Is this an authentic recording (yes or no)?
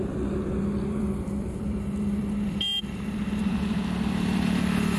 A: no